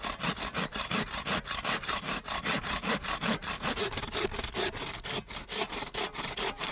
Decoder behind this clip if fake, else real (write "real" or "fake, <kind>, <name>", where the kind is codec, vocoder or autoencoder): real